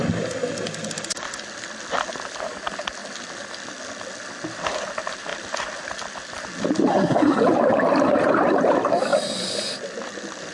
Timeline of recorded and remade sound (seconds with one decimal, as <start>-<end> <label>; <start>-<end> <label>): 0.0-6.9 recorded; 6.9-7.4 remade; 7.4-10.5 recorded